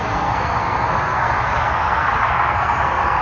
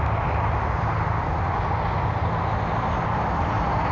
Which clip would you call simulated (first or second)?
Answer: first